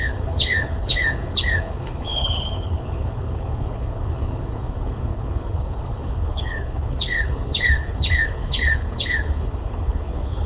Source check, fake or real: fake